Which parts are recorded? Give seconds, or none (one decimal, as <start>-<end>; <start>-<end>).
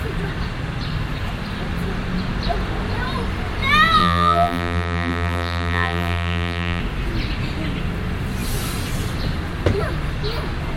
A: 0.0-4.0; 6.8-10.8